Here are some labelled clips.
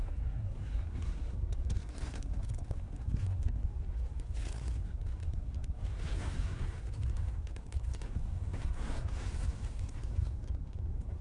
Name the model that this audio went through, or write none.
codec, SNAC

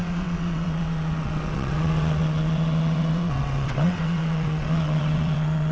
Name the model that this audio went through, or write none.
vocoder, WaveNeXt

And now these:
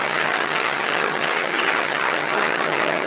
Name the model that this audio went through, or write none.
vocoder, HiFi-GAN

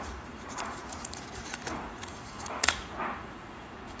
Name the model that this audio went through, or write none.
vocoder, Vocos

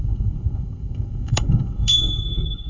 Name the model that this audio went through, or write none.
codec, SNAC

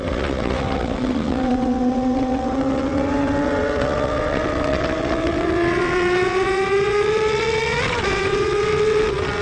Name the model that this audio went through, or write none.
vocoder, WaveNeXt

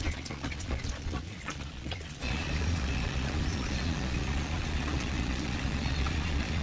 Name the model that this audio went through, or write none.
vocoder, Vocos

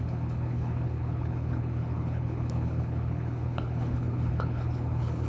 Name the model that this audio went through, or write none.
codec, HILCodec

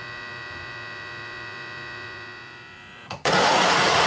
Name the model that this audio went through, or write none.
vocoder, Vocos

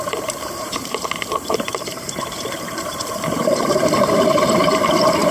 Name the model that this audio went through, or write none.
vocoder, BigVGAN v2